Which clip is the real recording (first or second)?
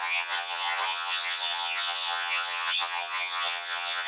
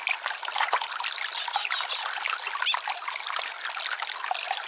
second